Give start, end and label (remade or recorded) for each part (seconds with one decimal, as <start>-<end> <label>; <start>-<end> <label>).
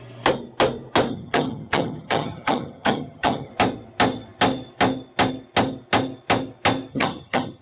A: 0.0-1.1 recorded; 1.1-3.5 remade; 3.5-6.9 recorded; 6.9-7.6 remade